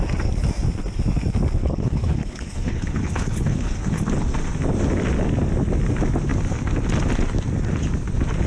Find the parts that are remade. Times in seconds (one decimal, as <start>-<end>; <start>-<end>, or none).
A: 1.6-4.0